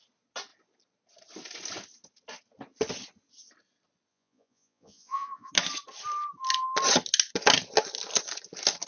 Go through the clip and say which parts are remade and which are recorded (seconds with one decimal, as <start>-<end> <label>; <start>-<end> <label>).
0.0-4.1 recorded; 4.1-5.5 remade; 5.5-8.9 recorded